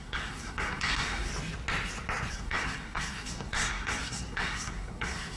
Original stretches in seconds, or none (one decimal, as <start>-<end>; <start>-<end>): 1.3-2.3

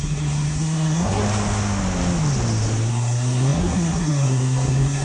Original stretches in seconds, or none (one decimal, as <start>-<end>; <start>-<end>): 1.2-2.9

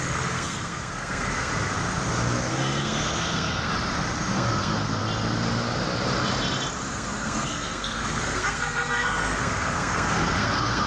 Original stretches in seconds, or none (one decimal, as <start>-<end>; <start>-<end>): 1.5-2.5; 3.7-4.3; 5.0-6.9

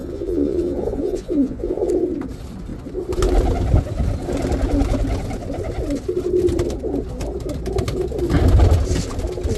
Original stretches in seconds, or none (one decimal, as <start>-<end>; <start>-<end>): 1.9-9.6